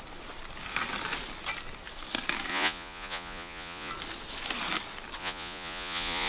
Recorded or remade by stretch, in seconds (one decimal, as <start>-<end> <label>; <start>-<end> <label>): 0.0-2.5 recorded; 2.5-3.9 remade; 3.9-5.2 recorded; 5.2-6.3 remade